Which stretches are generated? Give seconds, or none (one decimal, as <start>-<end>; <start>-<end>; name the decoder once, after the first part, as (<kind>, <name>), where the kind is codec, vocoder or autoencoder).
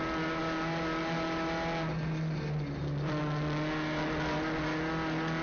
none